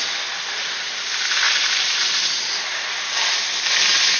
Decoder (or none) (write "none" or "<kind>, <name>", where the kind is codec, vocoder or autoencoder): none